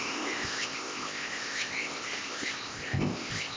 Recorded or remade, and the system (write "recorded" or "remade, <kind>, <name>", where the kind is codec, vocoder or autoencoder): remade, codec, ZipCodec